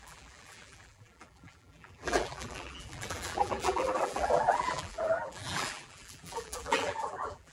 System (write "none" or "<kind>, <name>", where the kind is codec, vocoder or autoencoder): vocoder, BigVGAN v2